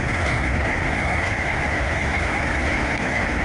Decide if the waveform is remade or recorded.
remade